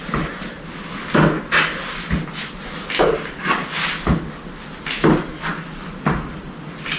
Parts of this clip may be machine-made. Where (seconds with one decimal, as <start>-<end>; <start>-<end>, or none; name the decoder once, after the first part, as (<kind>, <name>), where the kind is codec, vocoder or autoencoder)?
none